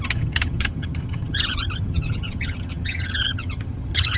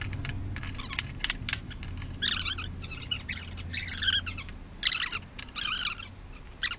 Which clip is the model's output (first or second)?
first